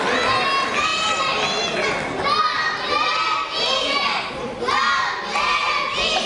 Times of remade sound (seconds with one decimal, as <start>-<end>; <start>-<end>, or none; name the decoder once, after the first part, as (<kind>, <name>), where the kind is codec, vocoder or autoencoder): none